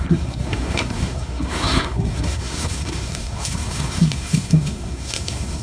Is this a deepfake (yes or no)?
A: yes